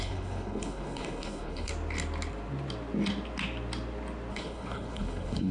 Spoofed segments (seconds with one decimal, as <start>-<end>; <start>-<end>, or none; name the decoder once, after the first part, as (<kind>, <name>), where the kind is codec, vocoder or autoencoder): 0.0-1.7 (codec, HILCodec); 4.3-5.5